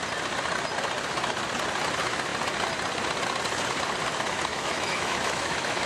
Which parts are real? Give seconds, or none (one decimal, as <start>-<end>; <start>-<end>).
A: 0.0-4.5